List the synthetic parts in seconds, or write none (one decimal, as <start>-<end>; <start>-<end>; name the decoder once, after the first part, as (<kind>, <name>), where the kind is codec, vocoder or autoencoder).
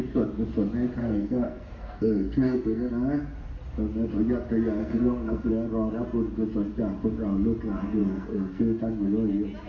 1.0-2.9 (codec, SNAC); 4.8-5.5; 8.0-8.8